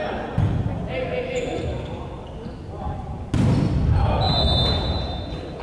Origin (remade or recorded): recorded